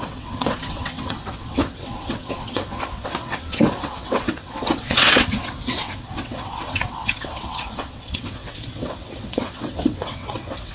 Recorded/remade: remade